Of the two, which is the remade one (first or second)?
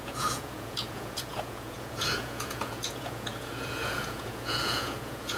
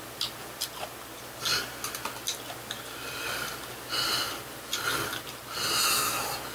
first